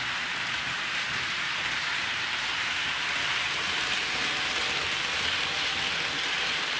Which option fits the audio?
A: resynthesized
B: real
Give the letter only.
B